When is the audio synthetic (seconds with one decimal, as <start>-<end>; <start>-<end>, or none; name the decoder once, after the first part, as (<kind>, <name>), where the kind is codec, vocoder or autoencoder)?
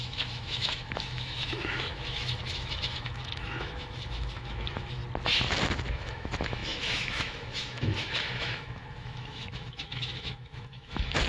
0.0-5.0 (autoencoder, DAC-VAE); 5.9-11.3